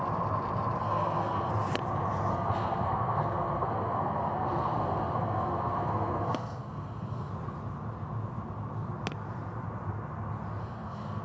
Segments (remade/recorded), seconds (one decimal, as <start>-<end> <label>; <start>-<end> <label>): 0.0-0.8 recorded; 0.8-1.5 remade; 1.5-2.3 recorded; 2.3-7.3 remade; 7.3-10.6 recorded; 10.6-11.2 remade